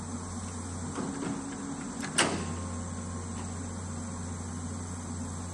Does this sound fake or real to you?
real